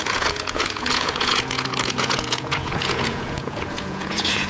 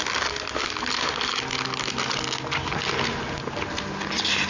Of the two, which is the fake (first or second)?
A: first